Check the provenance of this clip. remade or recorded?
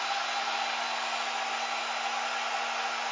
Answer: recorded